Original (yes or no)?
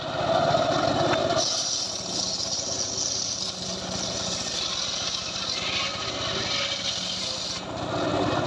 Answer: yes